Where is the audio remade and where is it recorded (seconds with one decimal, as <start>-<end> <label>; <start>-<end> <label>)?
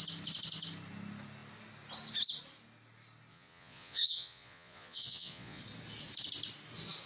0.0-3.3 recorded; 3.3-5.6 remade; 5.6-7.1 recorded